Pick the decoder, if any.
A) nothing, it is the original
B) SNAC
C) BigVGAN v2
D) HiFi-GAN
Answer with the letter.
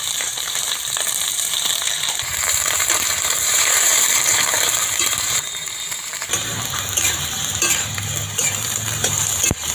C